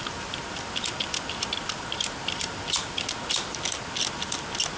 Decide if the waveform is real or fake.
real